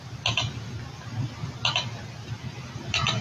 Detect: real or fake real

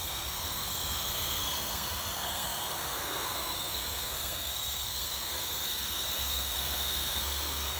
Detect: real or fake fake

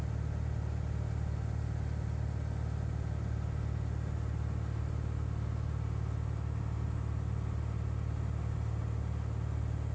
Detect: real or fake real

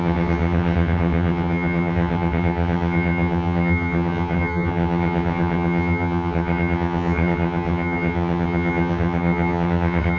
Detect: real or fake fake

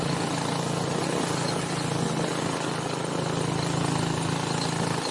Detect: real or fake real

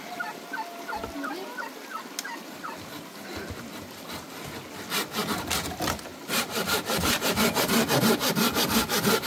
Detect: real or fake real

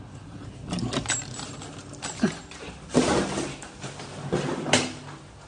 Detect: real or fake real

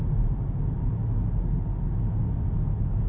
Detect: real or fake real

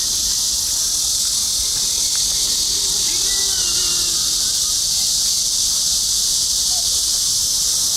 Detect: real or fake real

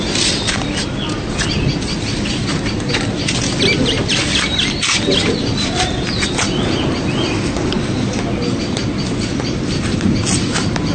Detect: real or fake real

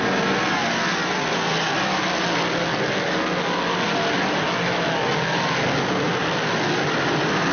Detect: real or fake real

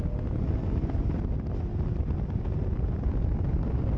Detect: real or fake real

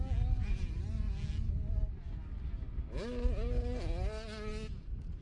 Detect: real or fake real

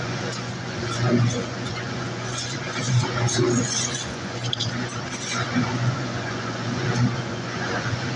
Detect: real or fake fake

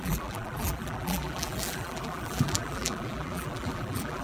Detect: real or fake fake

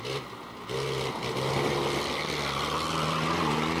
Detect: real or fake real